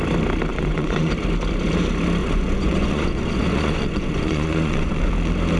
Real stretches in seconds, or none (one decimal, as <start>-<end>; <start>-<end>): 0.0-0.5; 1.1-2.2; 5.1-5.6